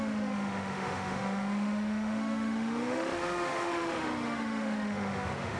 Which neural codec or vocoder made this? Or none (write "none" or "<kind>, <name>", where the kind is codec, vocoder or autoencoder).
autoencoder, DAC-VAE